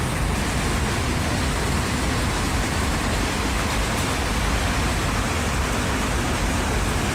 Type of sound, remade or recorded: recorded